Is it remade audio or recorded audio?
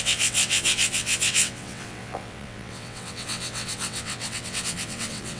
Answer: remade